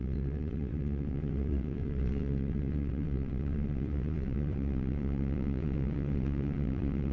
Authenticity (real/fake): fake